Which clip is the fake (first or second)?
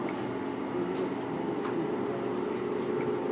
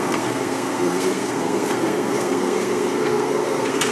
second